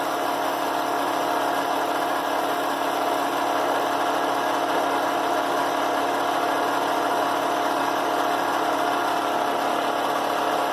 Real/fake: real